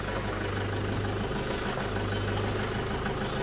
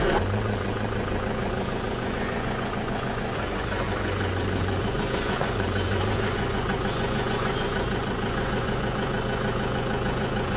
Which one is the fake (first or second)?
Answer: second